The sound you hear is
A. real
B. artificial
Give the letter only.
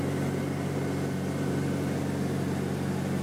A